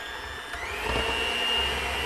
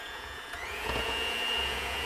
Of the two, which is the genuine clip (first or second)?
first